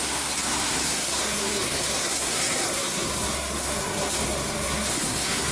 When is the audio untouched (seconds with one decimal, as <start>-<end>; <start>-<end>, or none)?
none